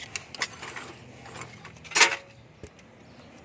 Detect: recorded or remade recorded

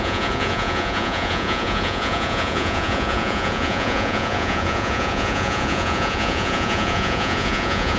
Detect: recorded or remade remade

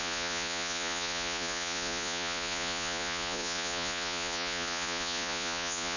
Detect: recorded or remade remade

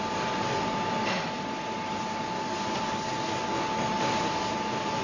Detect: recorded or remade recorded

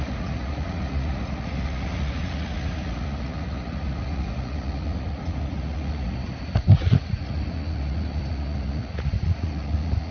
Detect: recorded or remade remade